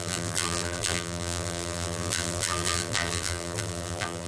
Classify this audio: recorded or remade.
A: remade